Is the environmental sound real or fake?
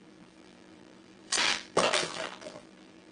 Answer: fake